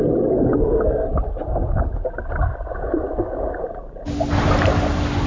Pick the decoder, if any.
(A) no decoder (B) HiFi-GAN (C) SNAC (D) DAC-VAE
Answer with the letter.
A